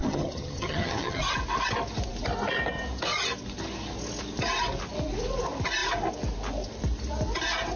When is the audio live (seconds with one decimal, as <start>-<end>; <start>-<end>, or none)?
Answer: 1.2-7.8